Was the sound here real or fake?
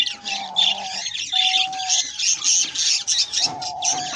real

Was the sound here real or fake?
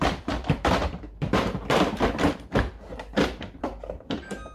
fake